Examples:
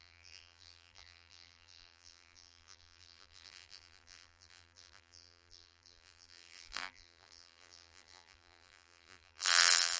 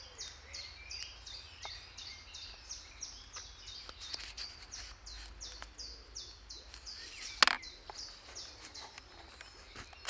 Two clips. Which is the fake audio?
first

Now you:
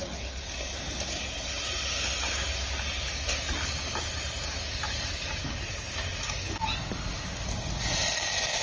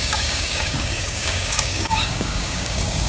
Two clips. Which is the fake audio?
second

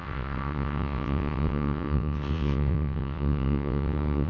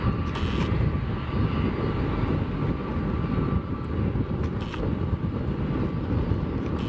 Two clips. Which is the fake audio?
first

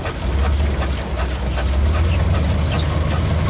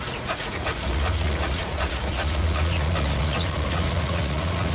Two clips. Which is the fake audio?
second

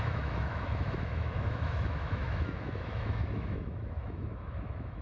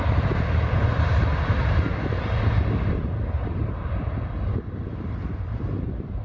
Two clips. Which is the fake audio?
first